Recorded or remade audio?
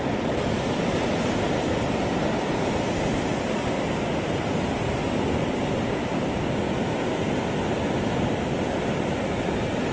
recorded